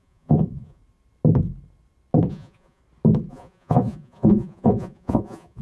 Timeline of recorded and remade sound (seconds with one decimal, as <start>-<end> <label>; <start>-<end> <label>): 0.0-0.8 remade; 0.8-2.3 recorded; 2.3-2.8 remade; 2.8-3.3 recorded; 3.3-5.6 remade